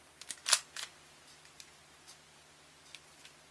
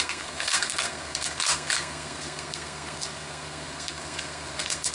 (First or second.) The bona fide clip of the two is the first